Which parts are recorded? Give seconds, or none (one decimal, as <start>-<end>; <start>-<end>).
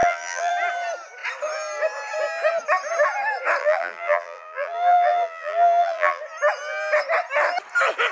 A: 0.5-3.6; 6.2-8.1